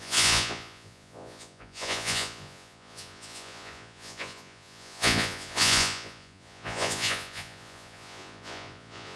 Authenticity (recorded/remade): remade